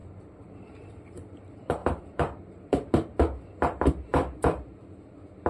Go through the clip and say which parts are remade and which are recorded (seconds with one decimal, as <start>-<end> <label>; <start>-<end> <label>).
0.0-1.4 remade; 1.4-1.8 recorded; 1.8-2.9 remade; 2.9-5.5 recorded